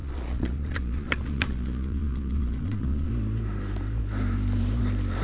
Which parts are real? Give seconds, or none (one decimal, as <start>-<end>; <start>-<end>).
3.1-5.2

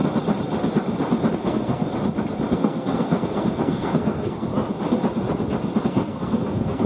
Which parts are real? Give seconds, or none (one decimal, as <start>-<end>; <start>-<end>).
0.0-1.3; 1.8-2.5; 4.5-5.8

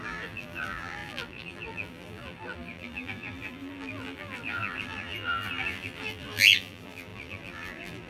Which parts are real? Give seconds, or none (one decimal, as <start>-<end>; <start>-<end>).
none